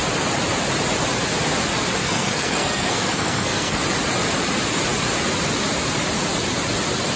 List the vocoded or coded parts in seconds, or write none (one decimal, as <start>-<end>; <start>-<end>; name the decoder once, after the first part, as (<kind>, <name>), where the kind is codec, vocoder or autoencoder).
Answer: 2.0-3.8 (codec, SNAC)